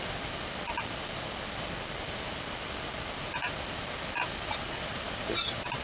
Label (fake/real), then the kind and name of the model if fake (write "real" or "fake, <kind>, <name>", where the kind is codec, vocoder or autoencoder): real